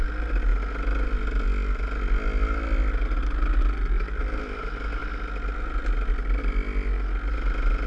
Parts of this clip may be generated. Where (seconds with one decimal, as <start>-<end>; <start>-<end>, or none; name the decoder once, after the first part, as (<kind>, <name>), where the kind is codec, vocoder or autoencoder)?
none